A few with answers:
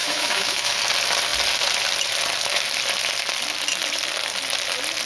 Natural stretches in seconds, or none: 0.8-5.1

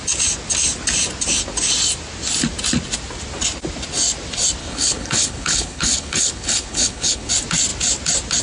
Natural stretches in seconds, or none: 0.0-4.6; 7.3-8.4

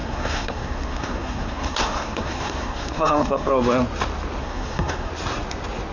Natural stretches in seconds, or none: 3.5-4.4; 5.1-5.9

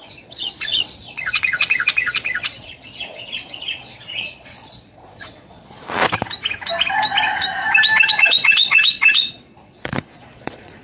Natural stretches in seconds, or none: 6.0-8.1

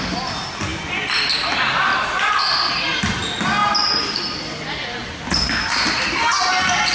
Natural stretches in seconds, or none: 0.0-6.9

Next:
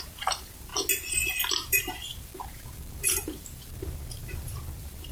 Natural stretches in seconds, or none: 0.7-1.5

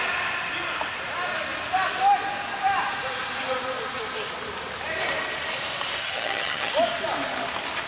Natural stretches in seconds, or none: 0.0-6.0; 6.7-7.9

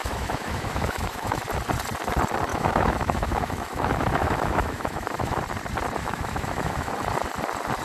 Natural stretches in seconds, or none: 1.4-2.5; 5.4-6.0; 6.9-7.8